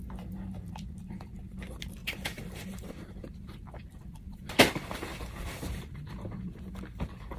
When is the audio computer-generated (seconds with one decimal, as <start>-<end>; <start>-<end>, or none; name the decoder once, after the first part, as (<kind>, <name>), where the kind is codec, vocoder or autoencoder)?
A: 2.0-2.9 (vocoder, BigVGAN v2)

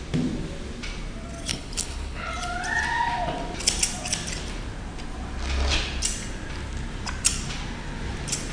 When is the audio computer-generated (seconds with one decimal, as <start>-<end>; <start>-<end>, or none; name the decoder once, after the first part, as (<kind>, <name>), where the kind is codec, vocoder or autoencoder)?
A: 1.5-2.3 (codec, HILCodec)